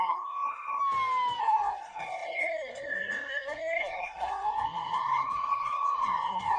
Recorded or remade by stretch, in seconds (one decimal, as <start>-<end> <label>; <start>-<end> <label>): 0.0-0.8 remade; 0.8-1.4 recorded; 1.4-6.6 remade